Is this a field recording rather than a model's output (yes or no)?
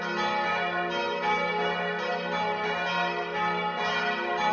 yes